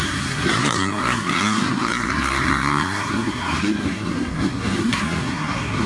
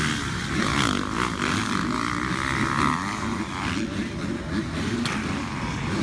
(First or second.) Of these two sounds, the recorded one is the second